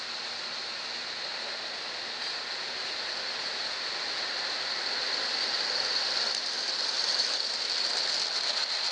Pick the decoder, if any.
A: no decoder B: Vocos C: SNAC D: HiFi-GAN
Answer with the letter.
A